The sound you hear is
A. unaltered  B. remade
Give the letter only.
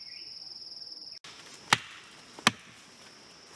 A